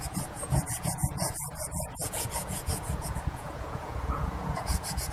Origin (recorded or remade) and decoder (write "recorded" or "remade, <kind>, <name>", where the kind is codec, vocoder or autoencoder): remade, vocoder, Vocos